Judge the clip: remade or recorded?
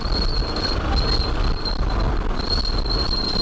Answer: recorded